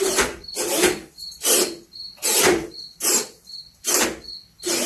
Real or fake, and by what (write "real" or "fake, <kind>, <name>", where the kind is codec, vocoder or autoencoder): real